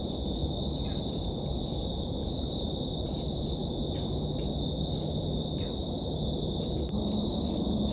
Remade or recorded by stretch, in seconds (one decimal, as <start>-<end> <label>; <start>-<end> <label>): 0.0-7.9 recorded